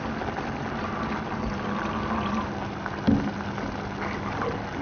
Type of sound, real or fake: real